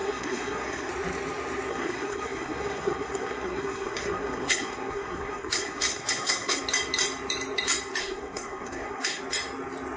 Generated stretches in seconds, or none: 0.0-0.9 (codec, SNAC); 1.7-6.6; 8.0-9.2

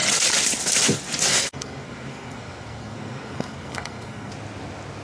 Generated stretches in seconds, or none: 1.3-4.3 (codec, SNAC)

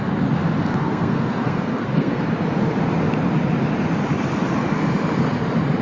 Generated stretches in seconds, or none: 0.7-2.2 (codec, SNAC)